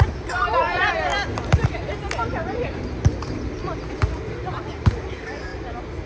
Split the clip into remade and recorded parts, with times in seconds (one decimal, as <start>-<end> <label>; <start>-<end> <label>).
0.0-3.6 remade; 3.6-4.5 recorded; 4.5-5.5 remade; 5.5-6.1 recorded